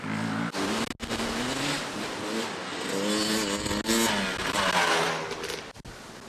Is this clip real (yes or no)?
yes